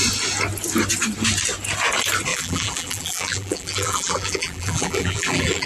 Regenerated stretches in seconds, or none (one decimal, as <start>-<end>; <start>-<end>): 2.3-5.7